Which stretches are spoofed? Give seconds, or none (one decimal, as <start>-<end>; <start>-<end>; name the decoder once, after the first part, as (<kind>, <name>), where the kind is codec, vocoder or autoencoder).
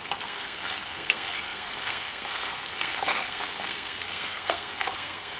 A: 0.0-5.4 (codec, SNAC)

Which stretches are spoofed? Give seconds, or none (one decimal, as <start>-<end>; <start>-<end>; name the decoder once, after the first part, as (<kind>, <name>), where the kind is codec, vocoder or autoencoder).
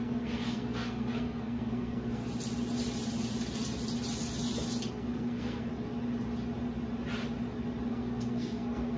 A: 0.0-2.2 (codec, SNAC); 4.9-5.7; 7.9-9.0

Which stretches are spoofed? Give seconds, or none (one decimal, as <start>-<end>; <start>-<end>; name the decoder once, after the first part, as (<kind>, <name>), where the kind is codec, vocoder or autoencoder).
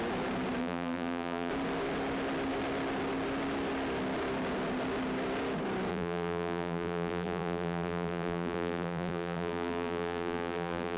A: 0.6-1.5 (vocoder, BigVGAN v2); 5.9-11.0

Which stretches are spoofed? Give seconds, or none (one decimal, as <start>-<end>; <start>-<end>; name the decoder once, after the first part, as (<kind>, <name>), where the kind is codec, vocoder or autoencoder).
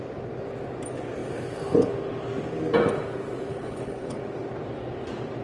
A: 3.5-4.2 (codec, HILCodec)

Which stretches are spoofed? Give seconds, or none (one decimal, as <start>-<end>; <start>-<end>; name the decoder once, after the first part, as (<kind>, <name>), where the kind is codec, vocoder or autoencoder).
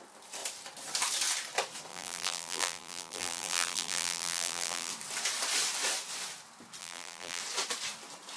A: 1.9-4.9 (vocoder, BigVGAN v2); 6.8-7.4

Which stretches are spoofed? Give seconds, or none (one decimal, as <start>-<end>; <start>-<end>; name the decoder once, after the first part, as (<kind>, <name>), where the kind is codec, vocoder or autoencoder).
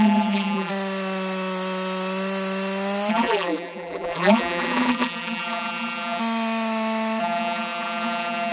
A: 0.0-0.7 (vocoder, BigVGAN v2); 3.1-6.2; 7.2-8.5